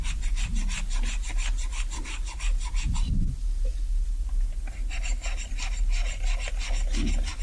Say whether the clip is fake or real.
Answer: real